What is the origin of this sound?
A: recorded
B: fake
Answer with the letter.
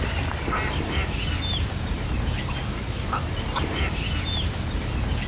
A